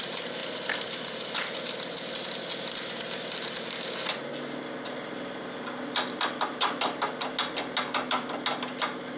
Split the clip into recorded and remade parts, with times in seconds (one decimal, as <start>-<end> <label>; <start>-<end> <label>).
0.0-9.2 recorded